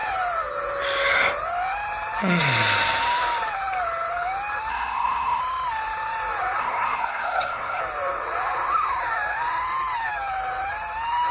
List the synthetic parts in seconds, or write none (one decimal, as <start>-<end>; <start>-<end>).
4.7-5.4; 6.6-7.8